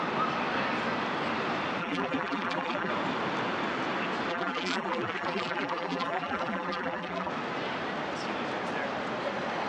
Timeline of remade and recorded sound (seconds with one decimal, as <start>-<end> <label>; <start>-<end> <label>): 0.0-1.8 recorded; 1.8-2.9 remade; 2.9-4.3 recorded; 4.3-7.3 remade; 7.3-9.7 recorded